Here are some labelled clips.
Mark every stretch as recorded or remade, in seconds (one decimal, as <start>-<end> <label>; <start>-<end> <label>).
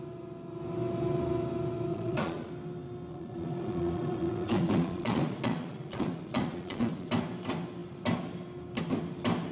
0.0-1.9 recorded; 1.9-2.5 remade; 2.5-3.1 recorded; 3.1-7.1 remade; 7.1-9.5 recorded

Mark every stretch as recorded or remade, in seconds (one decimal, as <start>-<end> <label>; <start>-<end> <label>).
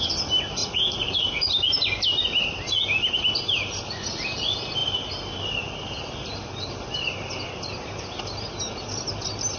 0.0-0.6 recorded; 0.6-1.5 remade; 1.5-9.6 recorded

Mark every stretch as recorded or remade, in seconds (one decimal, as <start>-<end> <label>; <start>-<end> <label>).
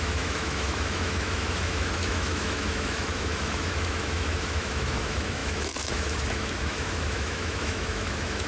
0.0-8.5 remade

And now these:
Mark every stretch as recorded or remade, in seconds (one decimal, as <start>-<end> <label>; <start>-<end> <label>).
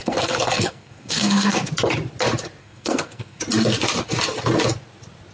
0.0-1.7 remade; 1.7-2.6 recorded; 2.6-3.4 remade; 3.4-5.3 recorded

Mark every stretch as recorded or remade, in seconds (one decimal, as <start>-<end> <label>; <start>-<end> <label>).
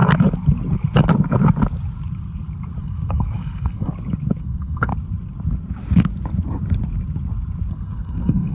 0.0-2.8 recorded; 2.8-3.9 remade; 3.9-4.4 recorded; 4.4-4.9 remade; 4.9-7.7 recorded; 7.7-8.5 remade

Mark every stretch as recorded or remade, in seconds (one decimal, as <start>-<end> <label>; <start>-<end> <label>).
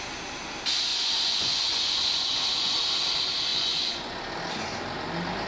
0.0-0.9 recorded; 0.9-2.7 remade; 2.7-3.5 recorded; 3.5-4.2 remade; 4.2-5.5 recorded